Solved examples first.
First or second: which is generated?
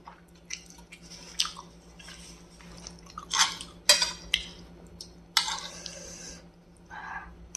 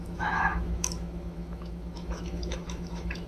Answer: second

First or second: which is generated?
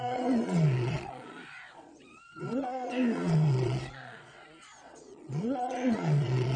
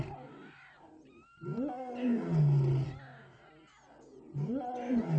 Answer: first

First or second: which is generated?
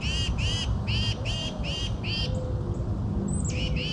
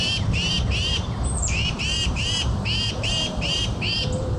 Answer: second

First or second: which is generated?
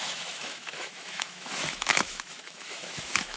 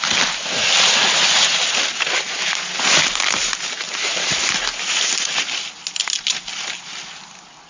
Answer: first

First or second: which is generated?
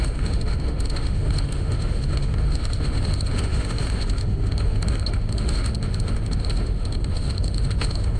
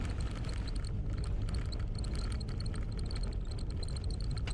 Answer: first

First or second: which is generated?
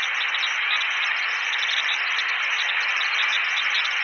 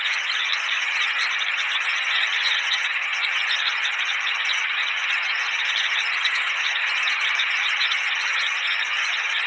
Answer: second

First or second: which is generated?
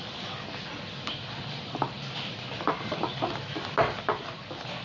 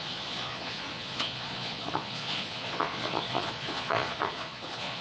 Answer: second